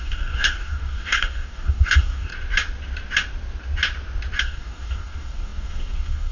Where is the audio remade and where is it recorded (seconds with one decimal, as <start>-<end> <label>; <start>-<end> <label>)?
0.0-2.3 remade; 2.3-4.4 recorded; 4.4-6.3 remade